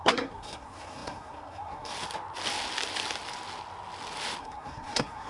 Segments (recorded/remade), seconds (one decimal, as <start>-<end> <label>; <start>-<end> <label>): 0.0-1.9 remade; 1.9-4.4 recorded; 4.4-5.3 remade